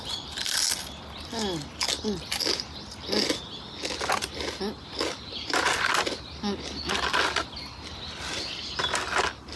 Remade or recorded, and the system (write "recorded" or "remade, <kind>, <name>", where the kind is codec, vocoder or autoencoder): recorded